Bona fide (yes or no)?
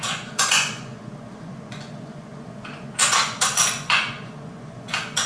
no